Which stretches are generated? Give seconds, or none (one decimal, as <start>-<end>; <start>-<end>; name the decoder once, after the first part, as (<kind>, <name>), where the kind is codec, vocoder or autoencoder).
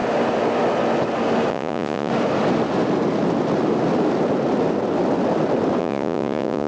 1.5-2.1 (vocoder, Vocos); 5.8-6.7